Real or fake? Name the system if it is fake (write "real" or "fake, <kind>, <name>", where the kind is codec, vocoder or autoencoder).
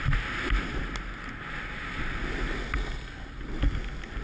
real